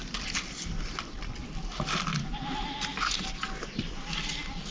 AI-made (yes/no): no